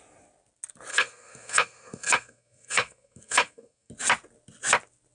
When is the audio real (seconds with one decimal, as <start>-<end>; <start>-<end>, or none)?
0.0-0.9; 3.9-5.1